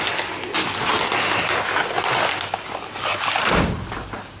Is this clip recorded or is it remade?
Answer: recorded